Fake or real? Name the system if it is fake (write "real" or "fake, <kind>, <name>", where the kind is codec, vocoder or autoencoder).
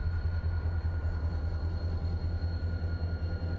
real